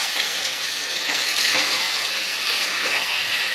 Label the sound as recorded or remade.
remade